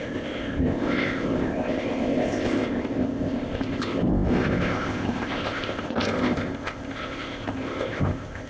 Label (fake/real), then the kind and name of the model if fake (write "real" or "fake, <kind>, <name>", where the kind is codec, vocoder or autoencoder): fake, codec, ZipCodec